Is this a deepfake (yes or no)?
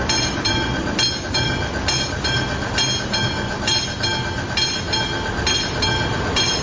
no